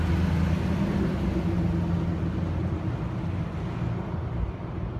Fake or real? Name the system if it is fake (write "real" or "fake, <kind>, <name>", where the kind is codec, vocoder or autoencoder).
real